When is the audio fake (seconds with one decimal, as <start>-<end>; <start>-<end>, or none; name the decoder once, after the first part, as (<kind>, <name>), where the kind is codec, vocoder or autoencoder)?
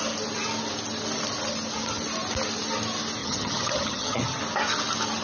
3.2-4.4 (vocoder, HiFi-GAN)